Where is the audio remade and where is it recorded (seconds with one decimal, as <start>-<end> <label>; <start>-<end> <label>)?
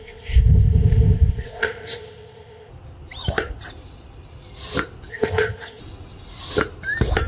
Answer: 0.0-2.7 remade; 2.7-5.1 recorded; 5.1-5.8 remade; 5.8-7.3 recorded